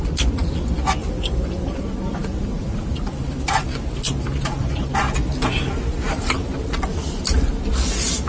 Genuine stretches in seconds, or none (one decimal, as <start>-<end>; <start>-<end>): 0.0-1.0; 1.9-8.3